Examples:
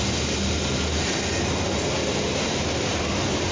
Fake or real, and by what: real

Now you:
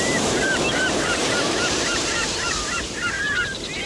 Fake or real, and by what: fake, vocoder, BigVGAN v2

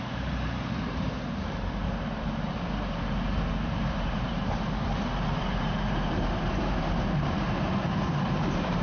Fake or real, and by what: fake, vocoder, BigVGAN v2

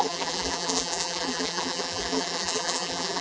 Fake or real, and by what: fake, vocoder, BigVGAN v2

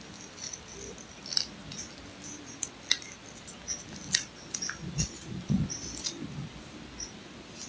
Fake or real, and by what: real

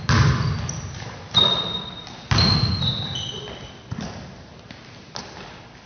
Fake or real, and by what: real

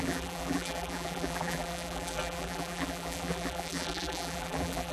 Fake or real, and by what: fake, vocoder, BigVGAN v2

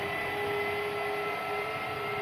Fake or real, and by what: real